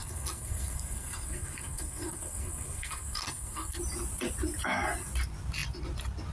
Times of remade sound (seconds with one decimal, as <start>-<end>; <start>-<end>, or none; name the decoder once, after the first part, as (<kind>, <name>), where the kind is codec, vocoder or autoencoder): 0.0-3.8 (codec, SNAC)